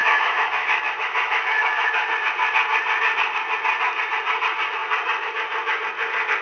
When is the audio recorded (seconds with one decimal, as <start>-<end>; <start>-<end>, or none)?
2.1-6.4